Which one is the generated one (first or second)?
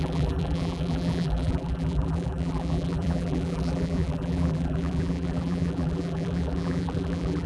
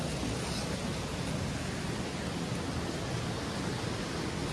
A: first